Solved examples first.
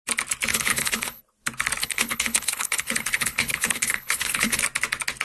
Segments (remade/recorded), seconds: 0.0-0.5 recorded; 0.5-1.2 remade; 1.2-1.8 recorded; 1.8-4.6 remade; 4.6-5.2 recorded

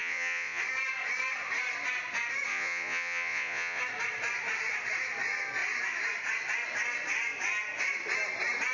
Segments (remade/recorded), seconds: 0.0-0.6 remade; 0.6-2.5 recorded; 2.5-3.8 remade; 3.8-8.7 recorded

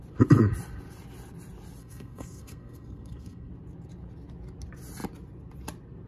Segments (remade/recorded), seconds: 0.0-1.8 recorded; 1.8-3.5 remade; 3.5-6.1 recorded

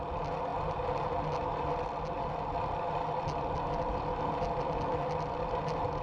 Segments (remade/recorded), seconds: 0.0-6.0 recorded

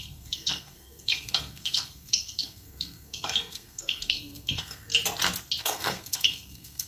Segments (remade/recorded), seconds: 0.0-4.9 remade; 4.9-5.6 recorded; 5.6-6.9 remade